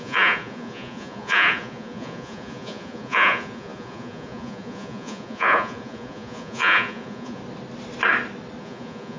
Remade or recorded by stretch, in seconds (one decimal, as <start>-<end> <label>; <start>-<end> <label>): 0.0-7.4 remade; 7.4-8.6 recorded; 8.6-9.2 remade